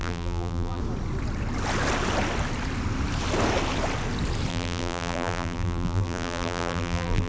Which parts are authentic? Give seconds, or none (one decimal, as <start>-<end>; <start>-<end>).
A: 0.8-4.5